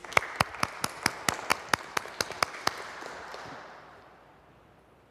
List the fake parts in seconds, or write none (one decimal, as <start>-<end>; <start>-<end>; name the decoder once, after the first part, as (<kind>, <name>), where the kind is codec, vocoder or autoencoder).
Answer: 1.5-2.4 (vocoder, BigVGAN v2); 3.3-4.2